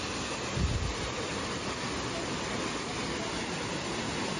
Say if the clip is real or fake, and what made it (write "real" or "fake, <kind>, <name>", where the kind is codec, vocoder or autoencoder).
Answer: real